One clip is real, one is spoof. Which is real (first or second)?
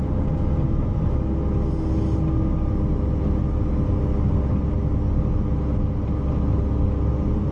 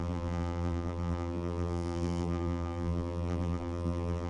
first